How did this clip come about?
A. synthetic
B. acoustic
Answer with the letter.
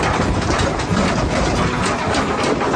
B